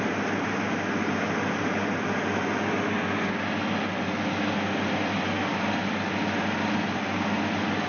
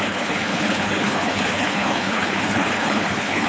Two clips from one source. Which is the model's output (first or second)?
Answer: second